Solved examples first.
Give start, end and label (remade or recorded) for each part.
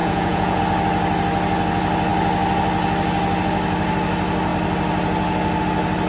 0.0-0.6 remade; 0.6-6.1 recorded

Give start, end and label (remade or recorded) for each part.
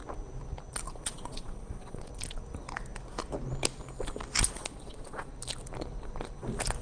0.0-0.9 recorded; 0.9-2.1 remade; 2.1-4.5 recorded; 4.5-5.3 remade; 5.3-6.8 recorded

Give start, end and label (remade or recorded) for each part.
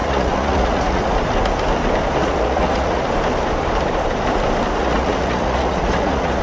0.0-1.0 remade; 1.0-2.2 recorded; 2.2-3.0 remade; 3.0-4.8 recorded; 4.8-6.4 remade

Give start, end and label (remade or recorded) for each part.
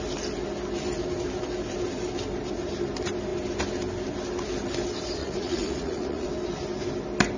0.0-5.2 recorded; 5.2-6.3 remade; 6.3-7.4 recorded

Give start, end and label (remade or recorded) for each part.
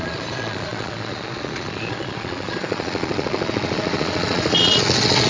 0.0-5.3 remade